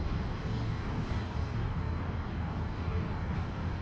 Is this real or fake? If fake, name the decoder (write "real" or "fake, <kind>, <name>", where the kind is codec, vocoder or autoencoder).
fake, codec, DAC